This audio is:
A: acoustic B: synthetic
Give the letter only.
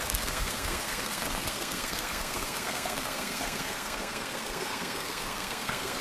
B